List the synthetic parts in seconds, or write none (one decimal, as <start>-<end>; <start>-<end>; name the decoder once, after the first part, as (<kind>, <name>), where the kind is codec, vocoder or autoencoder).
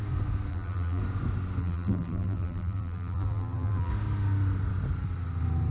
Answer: 0.5-1.0 (vocoder, BigVGAN v2); 1.6-3.9